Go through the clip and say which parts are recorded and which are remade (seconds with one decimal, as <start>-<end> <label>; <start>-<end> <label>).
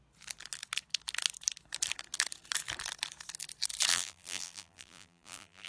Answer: 0.0-3.9 recorded; 3.9-5.7 remade